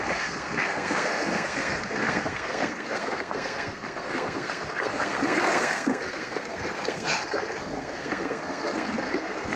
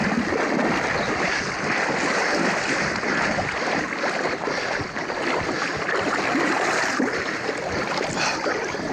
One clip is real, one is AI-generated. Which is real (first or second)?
second